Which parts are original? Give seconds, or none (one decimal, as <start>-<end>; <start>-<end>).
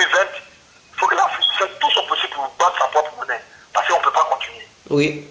0.0-1.0; 2.0-5.3